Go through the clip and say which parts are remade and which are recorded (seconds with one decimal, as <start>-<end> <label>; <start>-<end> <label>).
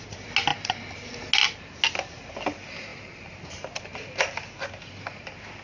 0.0-0.5 recorded; 0.5-1.1 remade; 1.1-2.9 recorded; 2.9-4.5 remade; 4.5-5.6 recorded